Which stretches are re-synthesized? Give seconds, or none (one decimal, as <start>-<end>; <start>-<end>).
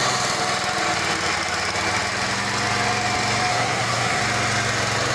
3.5-4.2